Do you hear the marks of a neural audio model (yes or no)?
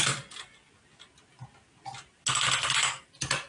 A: no